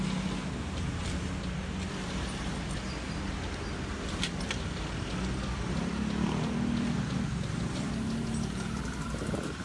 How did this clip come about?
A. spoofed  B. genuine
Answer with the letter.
A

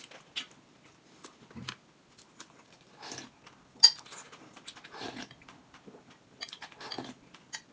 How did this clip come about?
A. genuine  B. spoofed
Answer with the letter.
A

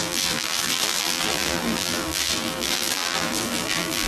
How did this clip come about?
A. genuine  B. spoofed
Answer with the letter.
B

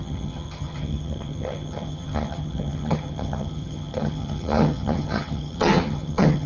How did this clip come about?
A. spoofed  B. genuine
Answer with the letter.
A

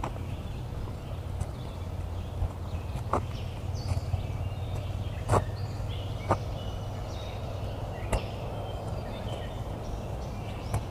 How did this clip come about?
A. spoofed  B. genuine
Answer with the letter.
A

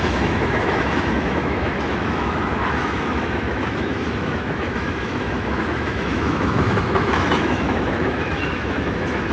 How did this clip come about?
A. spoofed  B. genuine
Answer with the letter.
A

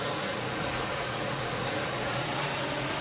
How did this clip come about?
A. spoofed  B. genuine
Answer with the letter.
A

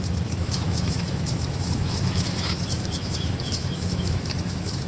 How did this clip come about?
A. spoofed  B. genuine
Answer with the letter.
A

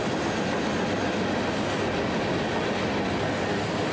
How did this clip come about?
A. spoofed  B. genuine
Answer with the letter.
B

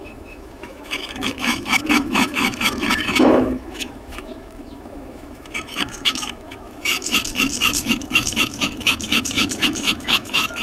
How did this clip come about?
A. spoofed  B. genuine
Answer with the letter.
A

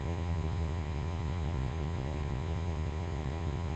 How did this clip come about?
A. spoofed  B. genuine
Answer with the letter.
A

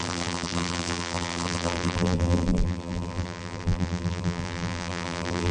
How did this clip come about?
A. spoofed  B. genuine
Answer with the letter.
A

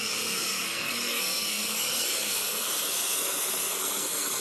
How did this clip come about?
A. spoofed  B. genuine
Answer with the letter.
A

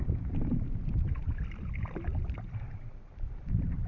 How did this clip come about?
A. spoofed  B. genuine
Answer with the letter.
A